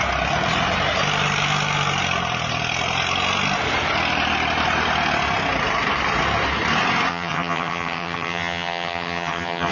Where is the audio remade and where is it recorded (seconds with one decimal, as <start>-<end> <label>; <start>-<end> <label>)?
0.0-7.1 recorded; 7.1-9.7 remade